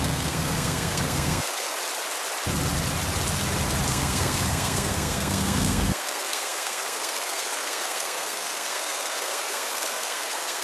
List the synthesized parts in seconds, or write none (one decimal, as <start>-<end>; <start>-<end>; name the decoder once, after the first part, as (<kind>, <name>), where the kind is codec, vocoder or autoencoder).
0.0-1.7 (codec, SNAC); 3.9-10.6